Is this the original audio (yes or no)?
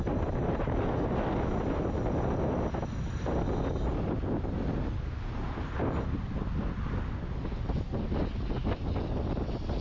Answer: yes